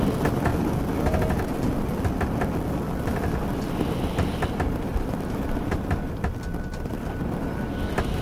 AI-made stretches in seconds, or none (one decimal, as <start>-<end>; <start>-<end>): 4.9-6.9